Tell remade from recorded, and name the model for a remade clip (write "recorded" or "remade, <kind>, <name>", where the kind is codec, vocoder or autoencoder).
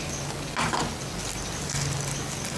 recorded